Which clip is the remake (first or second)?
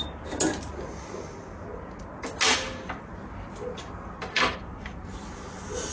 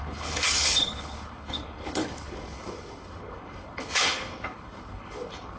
second